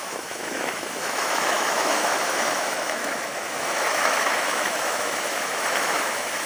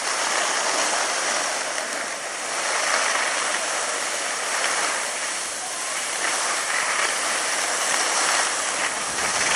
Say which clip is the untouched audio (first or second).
second